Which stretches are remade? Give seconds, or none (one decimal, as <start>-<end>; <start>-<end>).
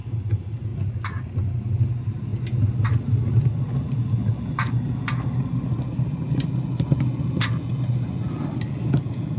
none